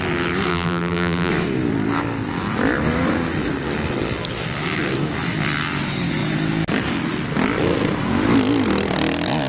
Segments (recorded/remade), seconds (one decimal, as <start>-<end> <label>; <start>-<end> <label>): 0.0-0.5 recorded; 0.5-1.3 remade; 1.3-9.5 recorded